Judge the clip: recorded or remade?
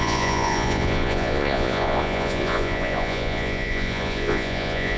remade